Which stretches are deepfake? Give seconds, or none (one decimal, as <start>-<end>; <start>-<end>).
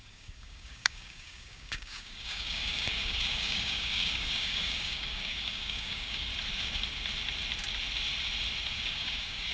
0.0-6.3; 8.7-9.5